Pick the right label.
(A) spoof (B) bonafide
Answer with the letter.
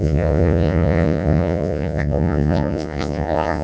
A